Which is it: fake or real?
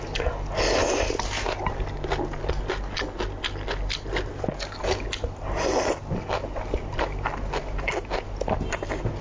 real